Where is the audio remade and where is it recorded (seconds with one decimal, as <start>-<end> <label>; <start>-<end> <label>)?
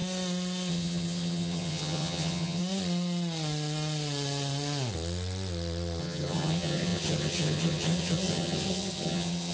0.0-0.7 recorded; 0.7-2.6 remade; 2.6-6.0 recorded; 6.0-9.5 remade